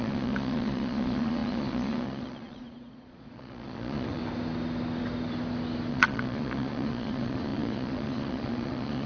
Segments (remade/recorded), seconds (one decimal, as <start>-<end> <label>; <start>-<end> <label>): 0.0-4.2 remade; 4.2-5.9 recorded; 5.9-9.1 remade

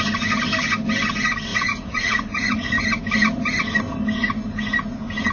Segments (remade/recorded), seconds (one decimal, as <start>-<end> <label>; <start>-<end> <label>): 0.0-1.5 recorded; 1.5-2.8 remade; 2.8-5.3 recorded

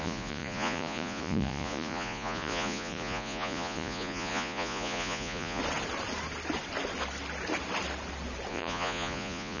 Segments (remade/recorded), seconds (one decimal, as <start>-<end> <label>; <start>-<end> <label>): 0.0-5.6 remade; 5.6-8.5 recorded; 8.5-9.6 remade

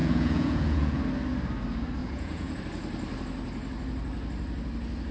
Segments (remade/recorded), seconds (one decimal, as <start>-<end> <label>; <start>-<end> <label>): 0.0-1.0 remade; 1.0-2.0 recorded; 2.0-2.6 remade; 2.6-5.1 recorded

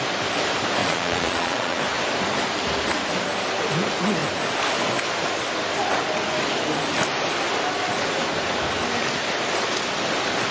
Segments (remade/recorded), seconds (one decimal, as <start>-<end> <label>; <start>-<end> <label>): 0.0-0.8 recorded; 0.8-1.8 remade; 1.8-10.5 recorded

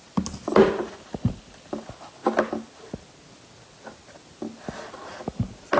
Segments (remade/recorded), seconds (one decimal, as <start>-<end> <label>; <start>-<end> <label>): 0.0-5.8 recorded